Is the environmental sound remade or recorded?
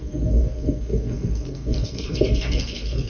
remade